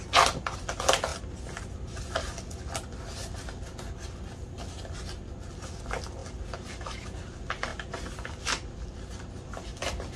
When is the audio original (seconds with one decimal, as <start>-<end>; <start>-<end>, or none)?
0.0-10.2